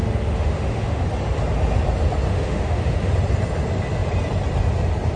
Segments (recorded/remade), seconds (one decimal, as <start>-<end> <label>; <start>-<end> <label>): 0.0-1.0 remade; 1.0-2.3 recorded; 2.3-3.1 remade; 3.1-5.2 recorded